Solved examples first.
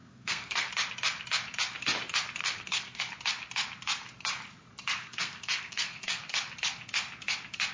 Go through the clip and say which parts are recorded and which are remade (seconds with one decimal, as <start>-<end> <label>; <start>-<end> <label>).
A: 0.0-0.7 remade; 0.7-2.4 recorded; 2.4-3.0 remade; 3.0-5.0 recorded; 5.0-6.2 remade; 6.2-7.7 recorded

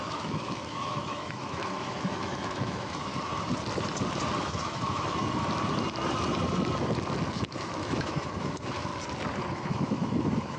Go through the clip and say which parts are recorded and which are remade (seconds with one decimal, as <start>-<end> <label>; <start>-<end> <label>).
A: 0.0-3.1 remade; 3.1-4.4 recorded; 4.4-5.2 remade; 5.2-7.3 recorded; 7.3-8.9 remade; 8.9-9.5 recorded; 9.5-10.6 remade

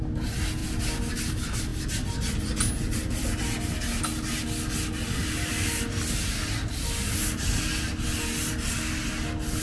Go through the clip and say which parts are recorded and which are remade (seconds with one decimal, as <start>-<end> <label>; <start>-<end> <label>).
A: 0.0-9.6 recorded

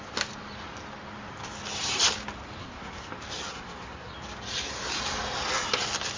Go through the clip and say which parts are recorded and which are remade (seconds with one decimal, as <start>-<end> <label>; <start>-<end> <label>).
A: 0.0-2.6 recorded; 2.6-3.1 remade; 3.1-3.5 recorded; 3.5-4.1 remade; 4.1-6.2 recorded

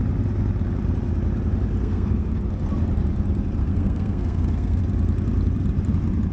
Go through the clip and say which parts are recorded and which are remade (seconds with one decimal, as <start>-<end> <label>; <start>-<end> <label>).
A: 0.0-1.8 recorded; 1.8-2.3 remade; 2.3-3.6 recorded; 3.6-4.8 remade; 4.8-6.3 recorded

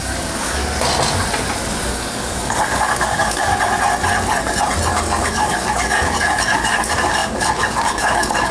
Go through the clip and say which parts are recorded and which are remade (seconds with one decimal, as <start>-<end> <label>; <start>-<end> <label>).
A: 0.0-0.6 remade; 0.6-1.9 recorded; 1.9-3.5 remade; 3.5-4.9 recorded; 4.9-8.5 remade